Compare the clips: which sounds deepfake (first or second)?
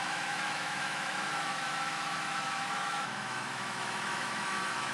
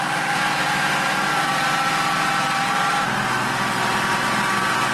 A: first